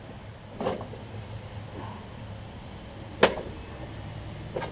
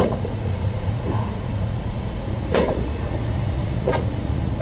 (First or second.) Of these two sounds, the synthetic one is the second